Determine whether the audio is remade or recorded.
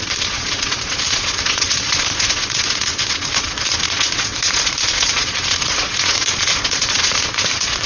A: remade